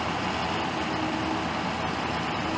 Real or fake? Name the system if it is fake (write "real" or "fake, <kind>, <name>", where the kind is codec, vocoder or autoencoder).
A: real